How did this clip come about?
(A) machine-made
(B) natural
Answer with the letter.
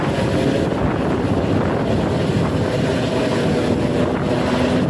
B